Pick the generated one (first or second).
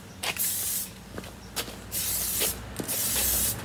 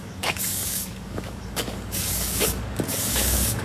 second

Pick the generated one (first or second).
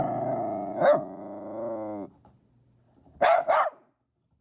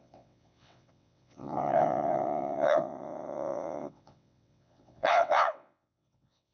second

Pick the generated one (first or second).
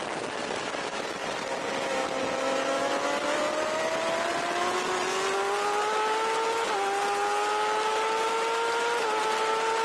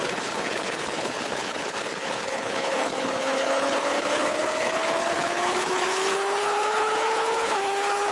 second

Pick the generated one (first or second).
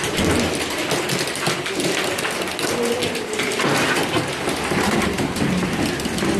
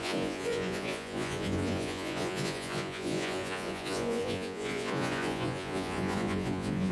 second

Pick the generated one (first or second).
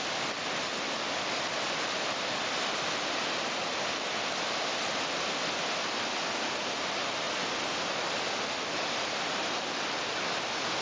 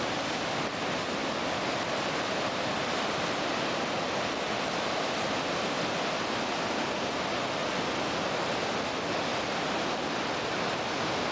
first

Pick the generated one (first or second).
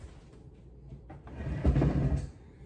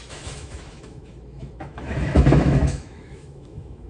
second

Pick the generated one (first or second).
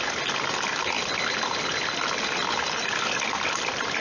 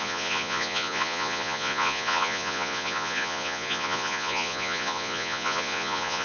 second